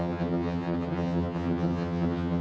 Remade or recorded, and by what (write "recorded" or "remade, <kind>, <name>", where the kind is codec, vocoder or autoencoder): remade, vocoder, HiFi-GAN